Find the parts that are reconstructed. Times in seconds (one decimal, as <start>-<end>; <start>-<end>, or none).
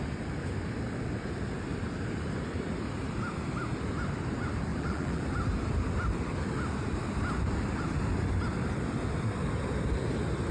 4.7-5.2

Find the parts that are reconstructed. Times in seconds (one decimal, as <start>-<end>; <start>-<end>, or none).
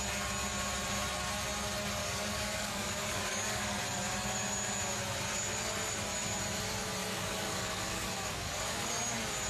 2.0-3.8; 7.0-8.9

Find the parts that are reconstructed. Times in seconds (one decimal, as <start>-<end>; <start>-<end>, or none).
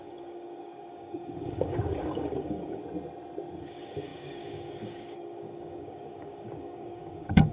0.0-2.8; 3.5-7.5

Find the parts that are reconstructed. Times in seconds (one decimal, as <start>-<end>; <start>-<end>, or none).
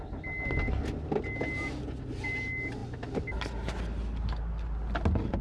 none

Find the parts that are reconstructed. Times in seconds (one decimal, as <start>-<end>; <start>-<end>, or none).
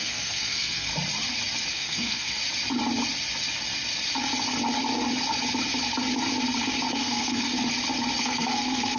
0.0-0.9; 1.7-2.4; 6.9-7.5; 8.2-9.0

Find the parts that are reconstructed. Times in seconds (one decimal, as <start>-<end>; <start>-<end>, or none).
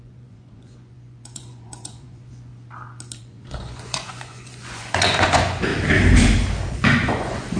0.0-2.5; 3.2-5.7; 6.7-7.6